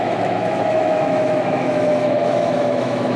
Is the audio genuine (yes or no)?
no